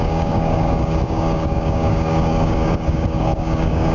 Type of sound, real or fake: fake